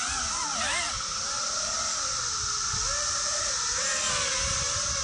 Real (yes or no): yes